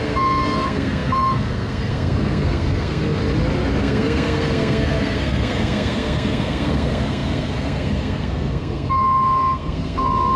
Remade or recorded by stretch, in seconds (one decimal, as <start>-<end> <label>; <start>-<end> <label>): 0.0-3.2 remade; 3.2-3.8 recorded; 3.8-10.4 remade